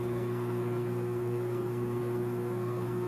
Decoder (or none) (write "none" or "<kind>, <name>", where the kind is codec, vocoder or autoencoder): codec, SNAC